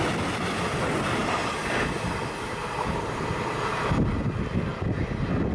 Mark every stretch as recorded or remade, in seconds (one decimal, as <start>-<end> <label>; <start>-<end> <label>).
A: 0.0-5.5 recorded